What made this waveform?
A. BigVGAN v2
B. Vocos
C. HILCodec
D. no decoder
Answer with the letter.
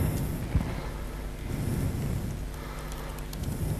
D